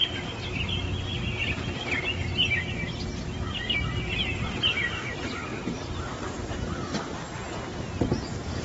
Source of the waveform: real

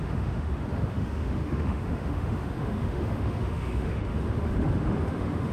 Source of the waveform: fake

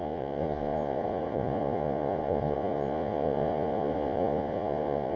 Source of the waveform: fake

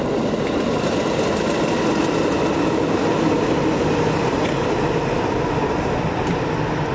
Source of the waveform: real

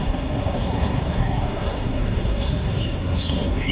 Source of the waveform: fake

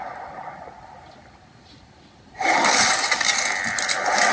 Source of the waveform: real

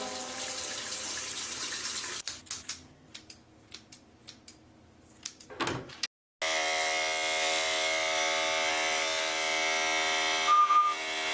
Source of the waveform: real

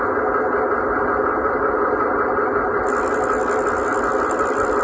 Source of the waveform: real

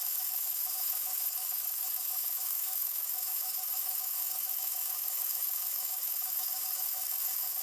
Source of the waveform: fake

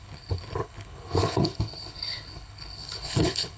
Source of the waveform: fake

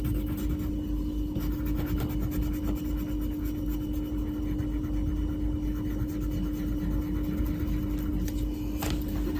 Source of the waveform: real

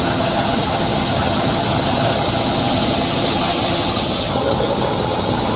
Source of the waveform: fake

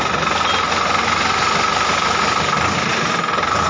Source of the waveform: real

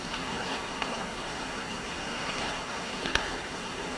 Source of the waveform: fake